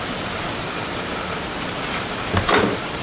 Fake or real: real